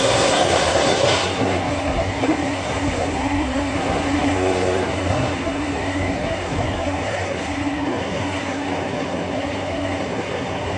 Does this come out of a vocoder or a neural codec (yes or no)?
yes